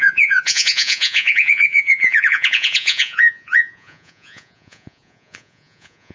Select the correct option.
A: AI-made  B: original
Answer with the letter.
A